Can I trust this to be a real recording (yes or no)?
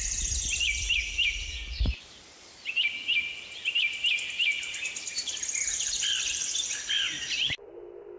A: yes